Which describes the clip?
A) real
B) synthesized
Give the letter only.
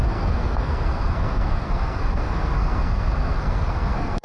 B